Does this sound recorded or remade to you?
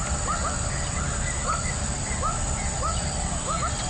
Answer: recorded